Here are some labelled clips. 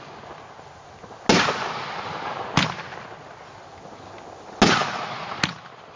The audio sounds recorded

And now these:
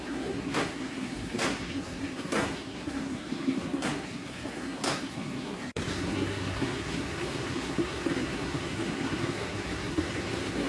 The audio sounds remade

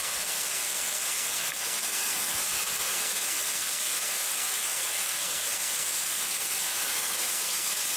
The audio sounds remade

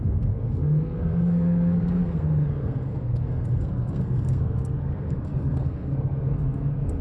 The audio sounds remade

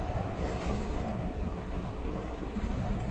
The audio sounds remade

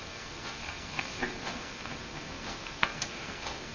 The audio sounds remade